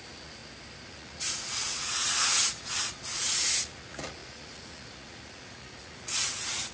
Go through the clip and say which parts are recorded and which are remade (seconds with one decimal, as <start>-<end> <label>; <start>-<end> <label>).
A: 0.0-0.4 remade; 0.4-0.9 recorded; 0.9-6.7 remade